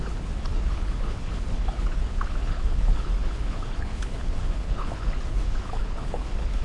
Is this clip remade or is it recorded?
remade